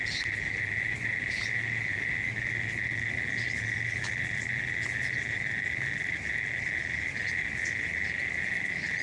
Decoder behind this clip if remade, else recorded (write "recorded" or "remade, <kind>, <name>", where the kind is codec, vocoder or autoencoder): recorded